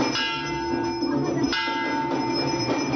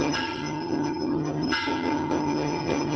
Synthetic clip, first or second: second